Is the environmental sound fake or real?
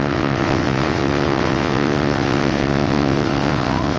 fake